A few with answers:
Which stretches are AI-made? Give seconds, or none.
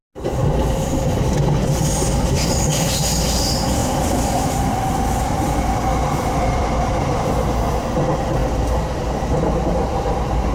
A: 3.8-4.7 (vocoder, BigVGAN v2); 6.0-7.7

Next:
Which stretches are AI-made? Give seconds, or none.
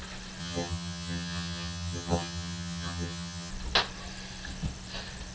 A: 0.4-3.5 (vocoder, HiFi-GAN)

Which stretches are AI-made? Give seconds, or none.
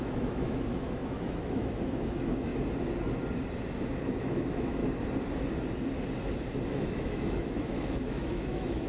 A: 0.0-2.5 (autoencoder, DAC-VAE); 4.1-4.8; 6.7-8.9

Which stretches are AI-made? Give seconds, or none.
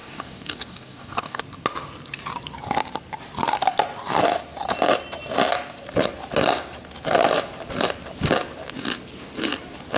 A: 0.0-1.4 (codec, DAC)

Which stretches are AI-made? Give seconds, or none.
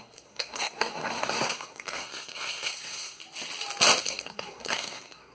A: 0.0-3.2 (codec, SNAC); 4.0-5.3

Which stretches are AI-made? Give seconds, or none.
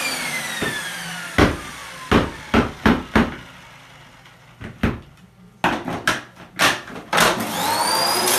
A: none